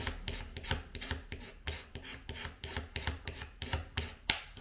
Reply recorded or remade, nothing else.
recorded